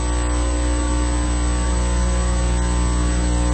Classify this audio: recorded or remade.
recorded